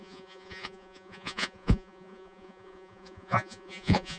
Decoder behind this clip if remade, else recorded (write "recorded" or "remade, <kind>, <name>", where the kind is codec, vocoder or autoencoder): remade, vocoder, Vocos